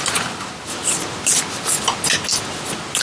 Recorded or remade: recorded